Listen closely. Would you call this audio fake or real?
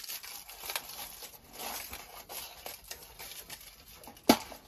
real